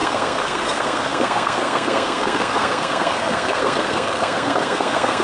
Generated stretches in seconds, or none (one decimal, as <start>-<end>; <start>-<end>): 0.0-5.2

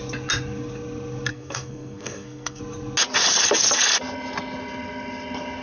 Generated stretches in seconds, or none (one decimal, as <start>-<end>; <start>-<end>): 1.3-2.6

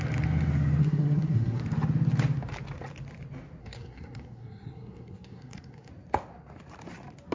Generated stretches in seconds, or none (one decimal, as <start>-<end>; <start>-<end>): 0.8-1.6; 3.6-5.9

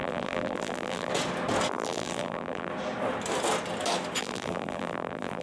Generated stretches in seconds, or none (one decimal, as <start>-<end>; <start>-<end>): 0.0-1.1; 1.7-2.7; 4.2-5.4

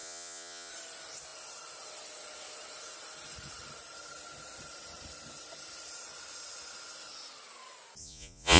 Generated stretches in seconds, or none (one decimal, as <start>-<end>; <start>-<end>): 0.0-0.7; 8.0-8.6

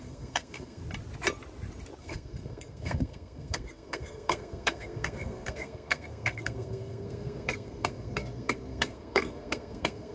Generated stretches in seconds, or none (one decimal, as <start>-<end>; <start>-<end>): 0.0-0.8; 2.0-10.1

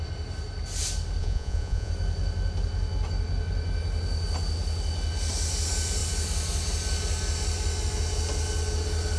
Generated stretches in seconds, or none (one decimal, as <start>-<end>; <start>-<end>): 1.2-1.9

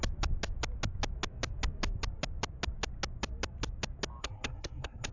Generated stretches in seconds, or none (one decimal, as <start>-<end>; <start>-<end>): 4.2-5.1